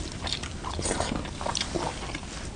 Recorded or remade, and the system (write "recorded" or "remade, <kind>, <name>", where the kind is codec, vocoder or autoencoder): recorded